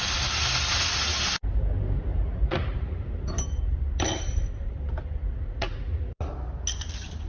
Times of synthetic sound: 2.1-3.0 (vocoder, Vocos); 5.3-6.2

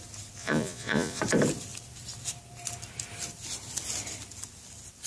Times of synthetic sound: 0.4-1.2 (vocoder, Vocos)